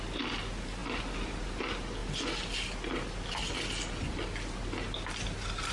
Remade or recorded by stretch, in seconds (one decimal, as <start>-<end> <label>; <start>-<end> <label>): 0.0-5.7 recorded

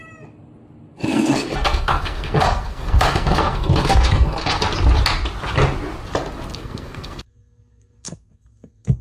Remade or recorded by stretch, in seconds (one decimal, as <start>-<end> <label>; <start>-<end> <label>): 0.0-0.9 recorded; 0.9-4.6 remade; 4.6-6.5 recorded; 6.5-9.0 remade

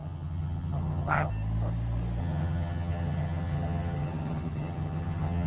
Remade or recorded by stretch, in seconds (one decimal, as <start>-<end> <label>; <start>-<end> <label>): 0.0-1.3 remade; 1.3-2.2 recorded; 2.2-5.5 remade

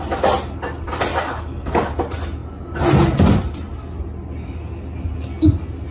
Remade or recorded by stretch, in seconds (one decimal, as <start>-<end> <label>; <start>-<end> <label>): 0.0-1.1 recorded; 1.1-1.9 remade; 1.9-5.9 recorded

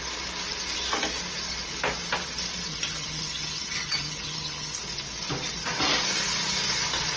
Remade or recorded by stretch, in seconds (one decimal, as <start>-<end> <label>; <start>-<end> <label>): 0.0-2.7 recorded; 2.7-4.8 remade; 4.8-7.2 recorded

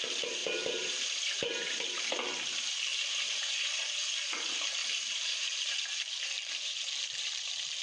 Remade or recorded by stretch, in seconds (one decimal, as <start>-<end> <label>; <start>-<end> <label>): 0.0-7.8 remade

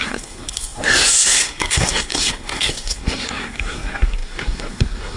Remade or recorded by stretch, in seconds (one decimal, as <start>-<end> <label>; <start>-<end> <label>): 0.0-5.2 remade

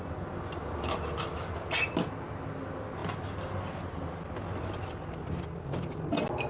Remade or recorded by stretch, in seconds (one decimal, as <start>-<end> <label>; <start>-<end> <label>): 0.0-6.5 recorded